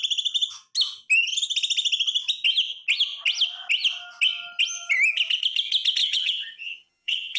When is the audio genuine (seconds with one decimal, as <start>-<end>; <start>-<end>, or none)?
0.0-6.0